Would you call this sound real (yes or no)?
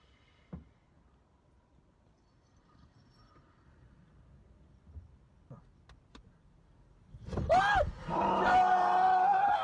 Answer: yes